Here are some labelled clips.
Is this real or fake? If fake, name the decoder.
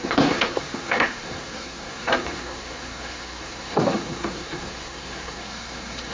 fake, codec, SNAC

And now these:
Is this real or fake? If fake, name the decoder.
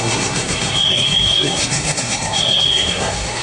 fake, codec, SNAC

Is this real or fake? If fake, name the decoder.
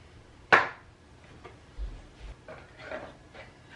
real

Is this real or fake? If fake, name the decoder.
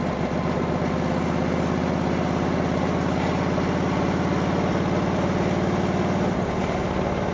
real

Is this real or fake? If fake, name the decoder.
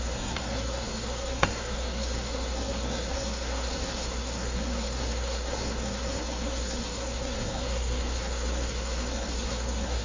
fake, codec, SNAC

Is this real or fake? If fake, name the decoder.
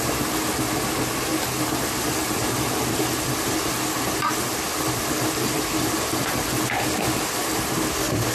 real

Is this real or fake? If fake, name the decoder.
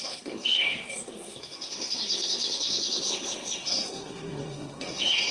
fake, codec, SNAC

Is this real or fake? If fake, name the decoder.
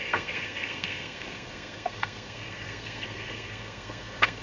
fake, codec, SNAC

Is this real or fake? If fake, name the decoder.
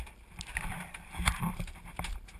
real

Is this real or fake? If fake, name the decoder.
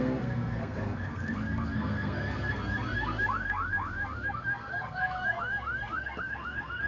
fake, codec, SNAC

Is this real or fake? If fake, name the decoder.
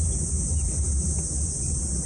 real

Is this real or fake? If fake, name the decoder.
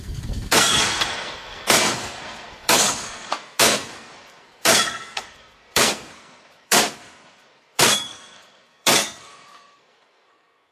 fake, codec, SNAC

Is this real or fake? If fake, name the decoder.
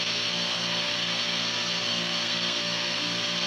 fake, codec, SNAC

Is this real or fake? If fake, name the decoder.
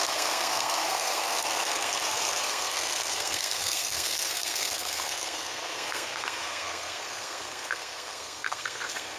fake, codec, SNAC